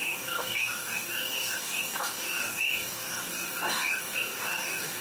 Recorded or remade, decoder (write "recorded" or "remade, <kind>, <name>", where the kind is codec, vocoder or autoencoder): remade, codec, DAC